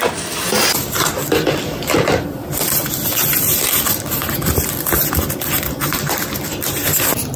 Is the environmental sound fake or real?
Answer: fake